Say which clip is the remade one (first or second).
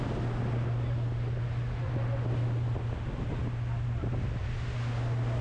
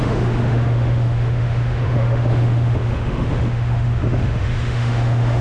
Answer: second